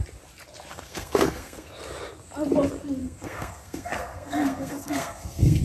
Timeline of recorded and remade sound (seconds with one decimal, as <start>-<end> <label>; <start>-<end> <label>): 0.0-0.7 recorded; 0.7-1.7 remade; 1.7-3.0 recorded; 3.0-5.6 remade